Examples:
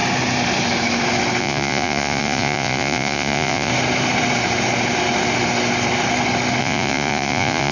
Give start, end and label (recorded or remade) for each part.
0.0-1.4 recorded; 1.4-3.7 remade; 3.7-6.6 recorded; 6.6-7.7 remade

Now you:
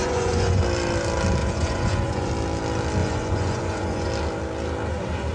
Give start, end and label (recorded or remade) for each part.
0.0-0.6 remade; 0.6-1.4 recorded; 1.4-2.3 remade; 2.3-3.0 recorded; 3.0-4.1 remade; 4.1-5.3 recorded

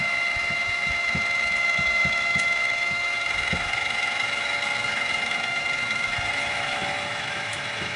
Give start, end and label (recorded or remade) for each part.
0.0-8.0 remade

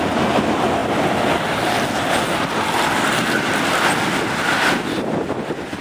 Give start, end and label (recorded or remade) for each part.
0.0-5.8 recorded

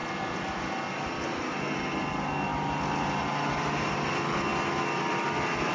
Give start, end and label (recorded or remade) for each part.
0.0-5.7 recorded

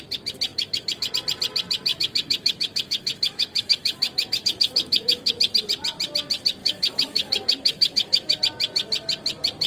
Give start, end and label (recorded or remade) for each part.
0.0-0.5 recorded; 0.5-1.1 remade; 1.1-1.9 recorded; 1.9-5.3 remade; 5.3-6.6 recorded; 6.6-8.4 remade; 8.4-9.7 recorded

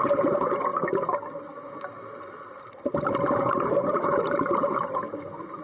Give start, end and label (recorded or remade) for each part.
0.0-5.6 recorded